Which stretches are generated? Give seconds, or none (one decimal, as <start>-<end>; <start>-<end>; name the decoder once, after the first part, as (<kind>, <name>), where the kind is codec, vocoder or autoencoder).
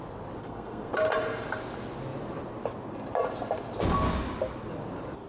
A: 0.4-0.9 (codec, SNAC)